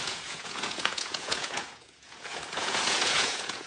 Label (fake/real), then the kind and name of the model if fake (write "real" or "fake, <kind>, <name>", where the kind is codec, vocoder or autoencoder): fake, vocoder, Vocos